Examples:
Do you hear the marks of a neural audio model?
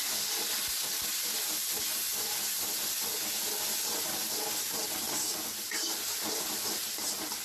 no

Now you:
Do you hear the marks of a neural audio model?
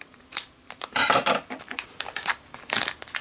no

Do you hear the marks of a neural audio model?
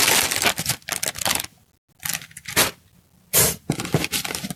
no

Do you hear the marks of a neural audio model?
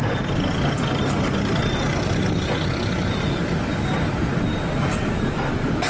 no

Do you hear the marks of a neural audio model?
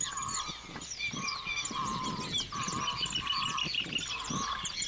no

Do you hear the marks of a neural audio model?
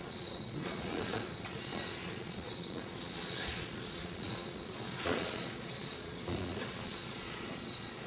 yes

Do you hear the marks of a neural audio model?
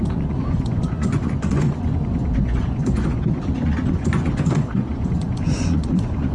yes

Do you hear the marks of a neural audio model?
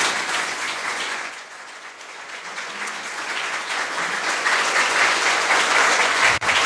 yes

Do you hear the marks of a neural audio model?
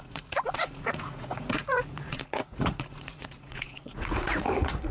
yes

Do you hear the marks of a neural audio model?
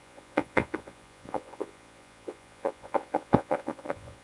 yes